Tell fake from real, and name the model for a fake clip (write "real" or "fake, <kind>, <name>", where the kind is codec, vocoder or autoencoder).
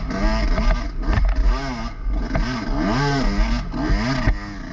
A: real